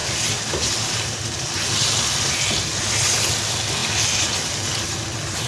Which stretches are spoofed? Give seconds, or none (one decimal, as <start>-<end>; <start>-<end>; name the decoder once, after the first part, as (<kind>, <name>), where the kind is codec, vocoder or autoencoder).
none